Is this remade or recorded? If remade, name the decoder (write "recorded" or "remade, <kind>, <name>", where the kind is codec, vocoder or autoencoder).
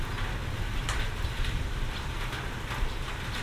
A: recorded